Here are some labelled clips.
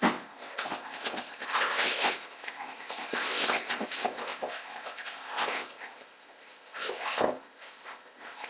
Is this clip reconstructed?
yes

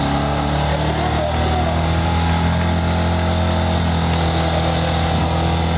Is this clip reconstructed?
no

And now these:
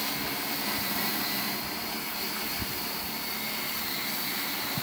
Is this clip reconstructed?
yes